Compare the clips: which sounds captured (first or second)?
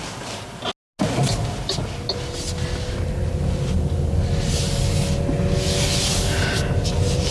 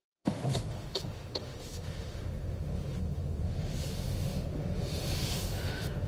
first